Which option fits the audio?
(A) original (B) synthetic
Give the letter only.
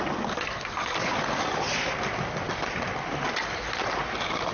A